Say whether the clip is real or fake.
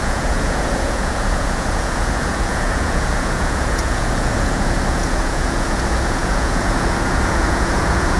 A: fake